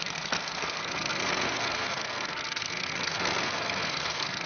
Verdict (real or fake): fake